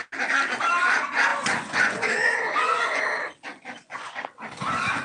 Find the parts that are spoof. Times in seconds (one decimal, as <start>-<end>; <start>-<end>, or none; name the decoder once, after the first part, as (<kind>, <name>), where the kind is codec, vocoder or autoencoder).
1.3-3.0 (vocoder, Vocos); 3.5-4.2